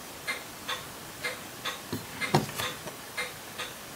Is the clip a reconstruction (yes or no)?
no